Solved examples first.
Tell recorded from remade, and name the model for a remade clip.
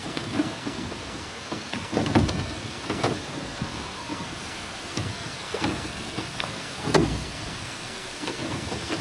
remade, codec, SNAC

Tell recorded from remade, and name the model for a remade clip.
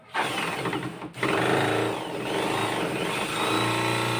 recorded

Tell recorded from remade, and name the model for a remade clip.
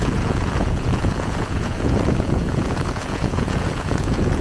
remade, vocoder, Vocos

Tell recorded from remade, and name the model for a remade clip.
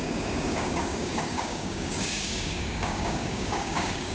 remade, codec, DAC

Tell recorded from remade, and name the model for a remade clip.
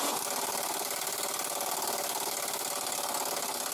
recorded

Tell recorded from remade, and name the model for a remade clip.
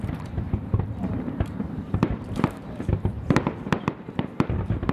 remade, vocoder, BigVGAN v2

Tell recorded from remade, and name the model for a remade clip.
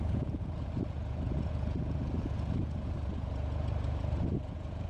remade, vocoder, Vocos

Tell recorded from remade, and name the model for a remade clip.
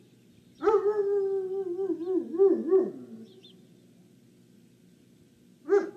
recorded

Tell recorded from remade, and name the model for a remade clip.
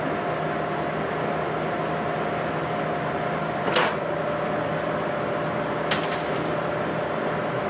recorded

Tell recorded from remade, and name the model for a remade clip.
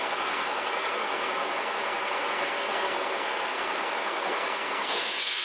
remade, codec, SNAC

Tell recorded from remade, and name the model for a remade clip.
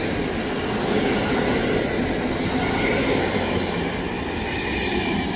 recorded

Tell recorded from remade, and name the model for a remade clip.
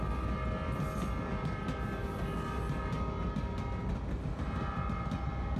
recorded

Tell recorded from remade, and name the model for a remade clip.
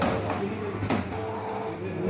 recorded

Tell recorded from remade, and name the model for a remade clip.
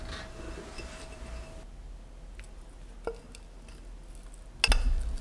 recorded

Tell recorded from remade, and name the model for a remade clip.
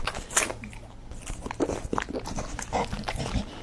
recorded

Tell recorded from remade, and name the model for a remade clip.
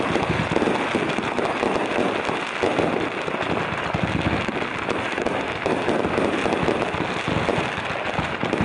recorded